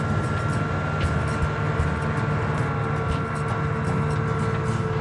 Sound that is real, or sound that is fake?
real